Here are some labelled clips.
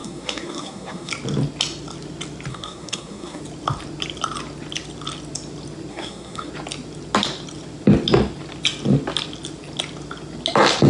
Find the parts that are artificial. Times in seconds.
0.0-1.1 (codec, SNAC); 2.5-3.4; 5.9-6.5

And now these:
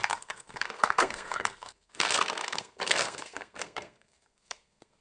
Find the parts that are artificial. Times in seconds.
0.0-5.0 (codec, SNAC)

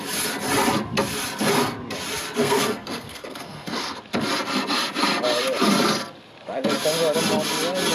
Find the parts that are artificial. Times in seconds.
2.4-4.0 (codec, SNAC)